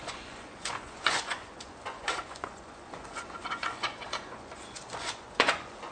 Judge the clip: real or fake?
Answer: fake